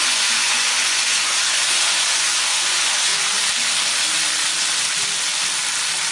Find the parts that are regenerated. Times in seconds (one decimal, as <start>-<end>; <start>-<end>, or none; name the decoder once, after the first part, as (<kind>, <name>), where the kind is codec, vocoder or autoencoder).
0.0-3.1 (vocoder, Vocos)